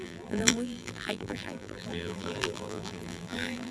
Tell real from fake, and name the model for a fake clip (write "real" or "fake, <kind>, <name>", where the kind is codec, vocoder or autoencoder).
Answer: fake, vocoder, BigVGAN v2